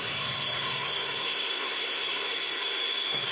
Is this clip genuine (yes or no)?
no